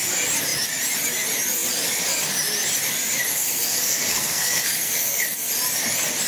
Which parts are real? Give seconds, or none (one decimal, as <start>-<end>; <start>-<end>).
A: 0.0-3.3; 5.5-6.3